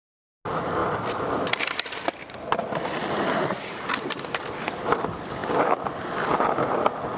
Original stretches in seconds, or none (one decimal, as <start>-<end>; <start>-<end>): 0.0-0.8; 5.0-7.2